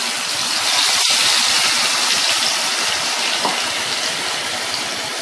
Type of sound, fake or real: fake